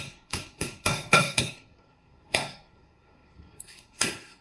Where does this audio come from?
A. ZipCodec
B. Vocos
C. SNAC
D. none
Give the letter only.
C